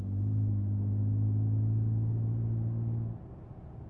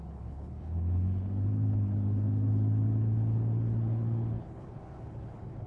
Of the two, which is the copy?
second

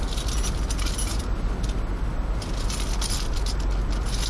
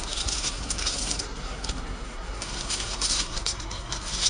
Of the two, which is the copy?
second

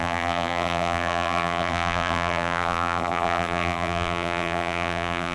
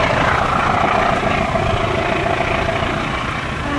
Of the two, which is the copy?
first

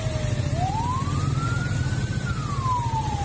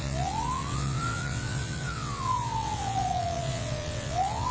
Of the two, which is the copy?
second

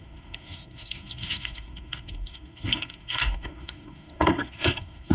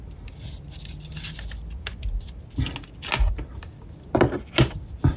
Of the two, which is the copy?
first